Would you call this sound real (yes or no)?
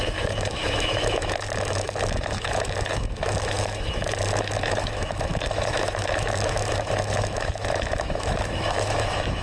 no